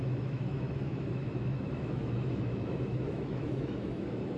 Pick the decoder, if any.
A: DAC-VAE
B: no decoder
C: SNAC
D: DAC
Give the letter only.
A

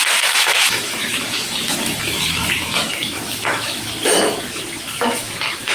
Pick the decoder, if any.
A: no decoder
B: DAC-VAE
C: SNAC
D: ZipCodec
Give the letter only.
B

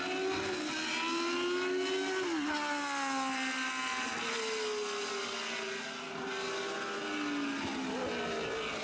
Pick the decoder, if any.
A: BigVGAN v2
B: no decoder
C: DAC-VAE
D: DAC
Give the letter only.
B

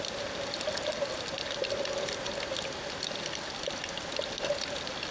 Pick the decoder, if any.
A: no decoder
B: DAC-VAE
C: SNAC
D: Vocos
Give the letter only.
A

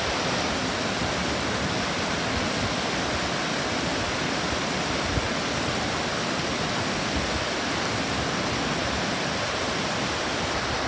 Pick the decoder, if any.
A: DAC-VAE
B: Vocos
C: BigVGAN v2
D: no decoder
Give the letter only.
D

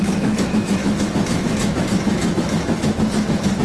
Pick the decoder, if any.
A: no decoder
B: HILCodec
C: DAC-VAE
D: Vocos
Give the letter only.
C